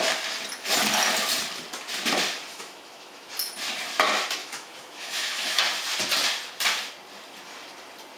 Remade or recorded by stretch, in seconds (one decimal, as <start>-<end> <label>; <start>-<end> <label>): 0.0-2.5 recorded; 2.5-3.3 remade; 3.3-4.4 recorded; 4.4-5.6 remade; 5.6-8.2 recorded